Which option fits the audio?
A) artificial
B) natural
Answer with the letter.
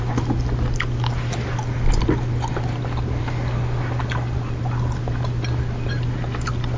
A